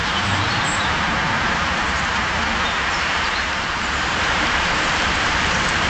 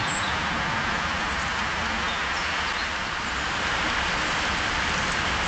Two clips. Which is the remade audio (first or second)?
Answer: first